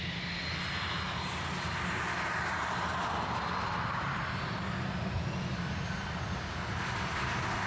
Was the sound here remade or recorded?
recorded